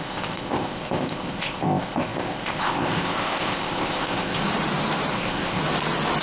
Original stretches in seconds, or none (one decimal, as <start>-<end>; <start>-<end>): 4.4-5.1; 5.6-6.2